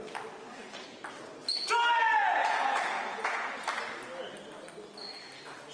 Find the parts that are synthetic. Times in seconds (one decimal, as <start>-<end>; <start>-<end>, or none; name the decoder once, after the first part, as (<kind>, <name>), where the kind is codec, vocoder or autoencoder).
2.2-3.5 (vocoder, Vocos)